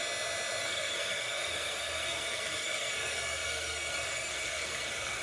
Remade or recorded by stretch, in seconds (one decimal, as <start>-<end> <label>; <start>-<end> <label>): 0.0-0.6 recorded; 0.6-5.2 remade